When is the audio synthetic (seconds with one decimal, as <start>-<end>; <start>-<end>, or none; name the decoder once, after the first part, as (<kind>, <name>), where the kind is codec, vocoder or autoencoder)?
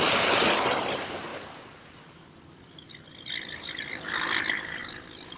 none